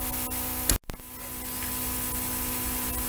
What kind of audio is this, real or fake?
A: real